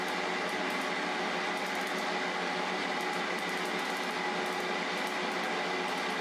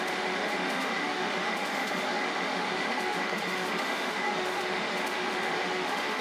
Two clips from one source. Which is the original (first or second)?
first